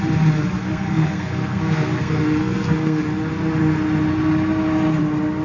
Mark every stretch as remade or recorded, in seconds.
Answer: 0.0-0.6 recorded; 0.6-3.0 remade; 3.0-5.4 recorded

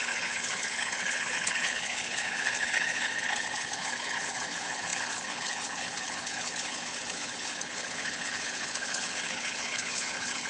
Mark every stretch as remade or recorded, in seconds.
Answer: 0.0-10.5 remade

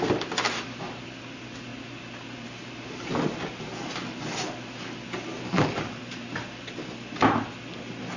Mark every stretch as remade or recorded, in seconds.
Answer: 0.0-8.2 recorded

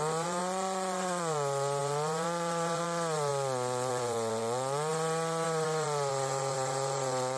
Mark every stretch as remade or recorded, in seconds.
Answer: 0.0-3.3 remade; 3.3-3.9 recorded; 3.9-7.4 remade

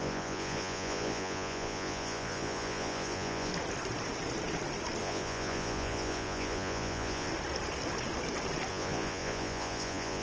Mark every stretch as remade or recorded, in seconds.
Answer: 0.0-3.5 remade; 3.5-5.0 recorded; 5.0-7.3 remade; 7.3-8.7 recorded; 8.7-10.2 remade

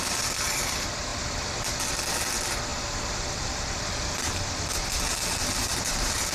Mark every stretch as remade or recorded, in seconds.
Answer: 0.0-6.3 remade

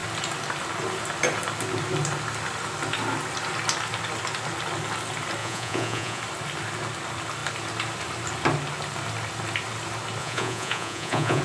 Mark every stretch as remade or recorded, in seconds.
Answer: 0.0-5.4 recorded; 5.4-6.2 remade; 6.2-10.2 recorded; 10.2-11.4 remade